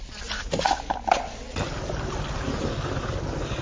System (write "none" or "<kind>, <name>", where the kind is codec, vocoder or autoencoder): none